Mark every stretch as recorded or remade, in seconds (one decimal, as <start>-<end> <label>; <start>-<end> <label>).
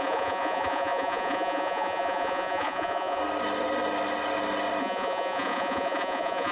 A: 0.0-3.2 remade; 3.2-4.8 recorded; 4.8-6.5 remade